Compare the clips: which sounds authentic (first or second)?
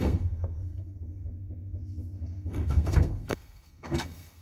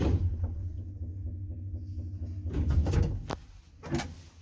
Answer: second